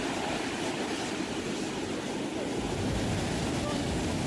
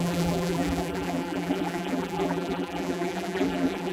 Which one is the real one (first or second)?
first